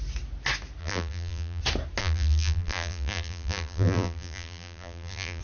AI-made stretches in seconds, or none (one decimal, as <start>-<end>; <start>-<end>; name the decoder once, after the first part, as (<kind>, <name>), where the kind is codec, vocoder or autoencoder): 0.8-1.6 (vocoder, BigVGAN v2); 2.0-5.4